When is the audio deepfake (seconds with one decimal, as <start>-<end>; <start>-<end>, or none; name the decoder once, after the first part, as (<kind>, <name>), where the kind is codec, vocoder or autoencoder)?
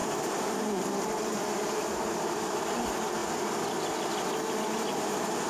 0.0-2.6 (vocoder, BigVGAN v2)